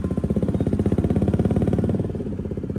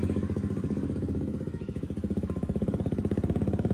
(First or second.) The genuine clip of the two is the first